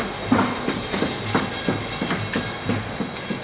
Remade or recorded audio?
recorded